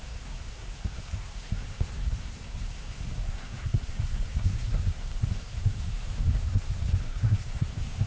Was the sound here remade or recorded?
remade